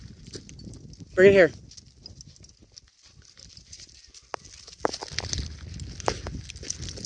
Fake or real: real